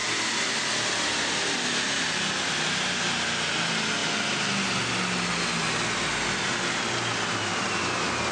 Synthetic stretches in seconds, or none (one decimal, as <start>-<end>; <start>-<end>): none